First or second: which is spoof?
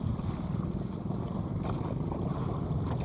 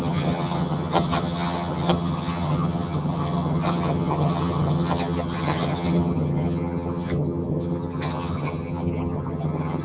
second